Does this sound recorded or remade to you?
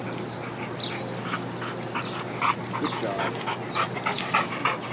recorded